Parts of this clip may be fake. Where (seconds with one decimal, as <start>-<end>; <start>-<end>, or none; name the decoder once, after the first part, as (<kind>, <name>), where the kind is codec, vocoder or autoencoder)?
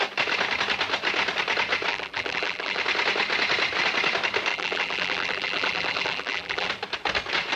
1.9-2.8 (vocoder, BigVGAN v2); 4.5-6.7